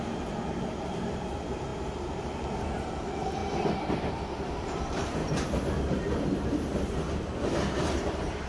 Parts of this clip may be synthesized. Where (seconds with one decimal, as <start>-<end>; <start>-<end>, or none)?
0.0-8.5